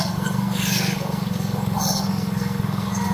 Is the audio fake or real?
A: fake